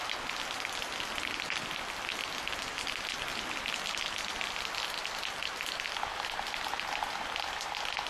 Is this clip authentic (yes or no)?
yes